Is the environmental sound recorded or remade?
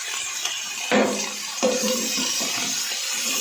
remade